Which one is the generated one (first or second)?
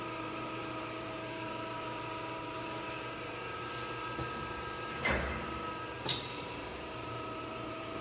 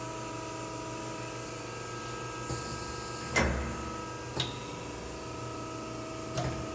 first